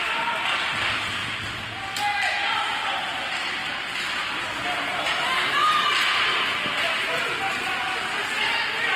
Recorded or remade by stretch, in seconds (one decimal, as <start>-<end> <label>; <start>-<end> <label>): 0.0-1.2 recorded; 1.2-1.7 remade; 1.7-3.6 recorded; 3.6-4.5 remade; 4.5-6.3 recorded; 6.3-7.2 remade; 7.2-9.0 recorded